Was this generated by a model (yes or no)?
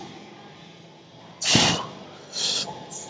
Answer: no